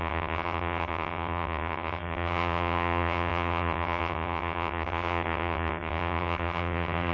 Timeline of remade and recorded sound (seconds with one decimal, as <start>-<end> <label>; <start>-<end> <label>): 0.0-7.1 remade